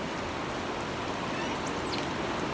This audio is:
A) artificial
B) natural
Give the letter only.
B